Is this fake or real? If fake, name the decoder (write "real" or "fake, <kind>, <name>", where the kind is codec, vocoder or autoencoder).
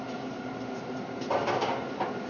fake, vocoder, BigVGAN v2